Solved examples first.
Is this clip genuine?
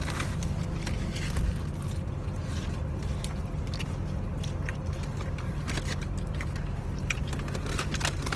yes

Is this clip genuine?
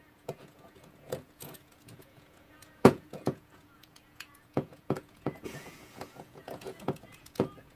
no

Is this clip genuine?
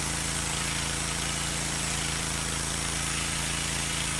yes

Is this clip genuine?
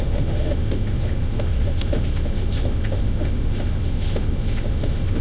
no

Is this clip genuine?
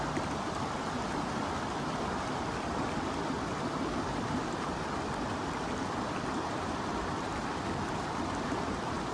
no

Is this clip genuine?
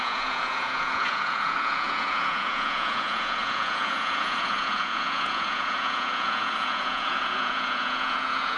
no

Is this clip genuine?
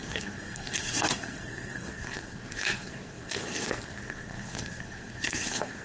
no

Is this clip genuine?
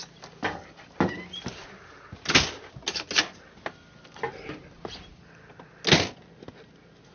yes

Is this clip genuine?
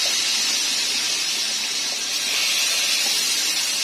yes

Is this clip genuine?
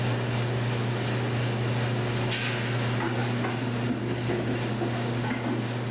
yes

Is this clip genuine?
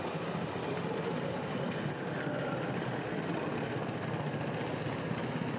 yes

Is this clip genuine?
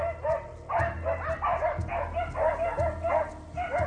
yes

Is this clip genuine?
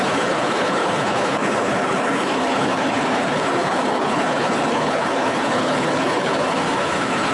no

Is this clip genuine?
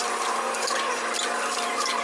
no